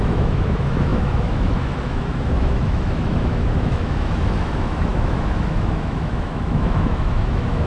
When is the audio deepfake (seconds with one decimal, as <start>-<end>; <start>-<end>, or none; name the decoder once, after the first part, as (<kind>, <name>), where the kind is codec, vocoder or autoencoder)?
0.0-7.7 (autoencoder, DAC-VAE)